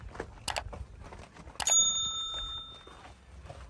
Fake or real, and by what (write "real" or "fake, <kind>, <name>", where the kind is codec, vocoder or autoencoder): real